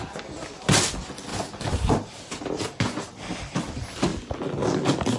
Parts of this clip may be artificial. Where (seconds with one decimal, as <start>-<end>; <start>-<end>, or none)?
1.3-2.4